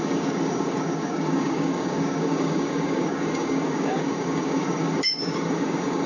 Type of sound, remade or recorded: remade